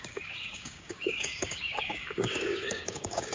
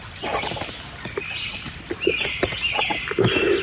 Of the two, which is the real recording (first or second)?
second